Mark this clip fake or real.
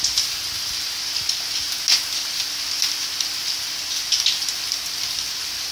real